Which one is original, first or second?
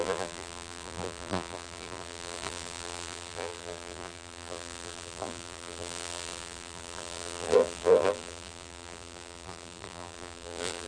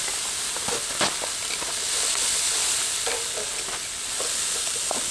second